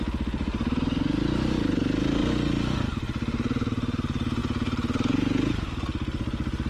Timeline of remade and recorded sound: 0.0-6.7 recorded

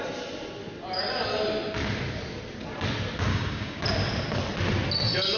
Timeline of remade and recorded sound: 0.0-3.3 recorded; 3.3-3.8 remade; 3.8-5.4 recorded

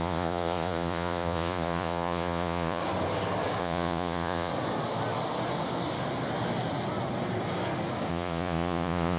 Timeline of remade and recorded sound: 0.0-2.8 remade; 2.8-3.6 recorded; 3.6-4.5 remade; 4.5-8.1 recorded; 8.1-9.2 remade

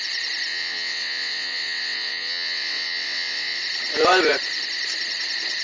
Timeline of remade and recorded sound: 0.0-0.5 recorded; 0.5-3.6 remade; 3.6-5.6 recorded